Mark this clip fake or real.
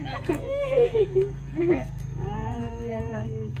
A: fake